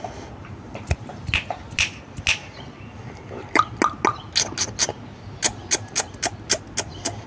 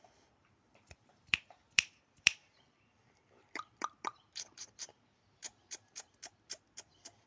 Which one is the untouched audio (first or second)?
first